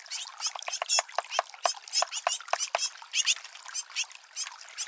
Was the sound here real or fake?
real